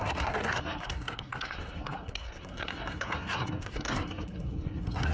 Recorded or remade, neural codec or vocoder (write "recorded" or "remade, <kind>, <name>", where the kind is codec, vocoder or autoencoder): remade, codec, SNAC